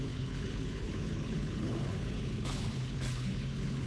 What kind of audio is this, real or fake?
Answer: fake